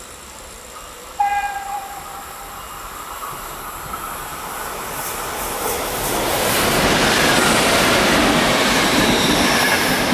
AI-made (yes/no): yes